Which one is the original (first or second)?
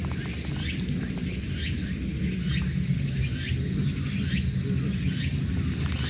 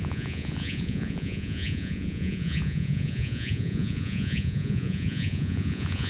first